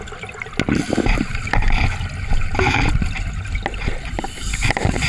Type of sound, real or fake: real